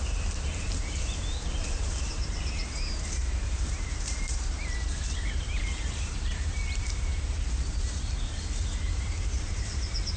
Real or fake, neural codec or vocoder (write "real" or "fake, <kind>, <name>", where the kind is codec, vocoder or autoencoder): fake, vocoder, BigVGAN v2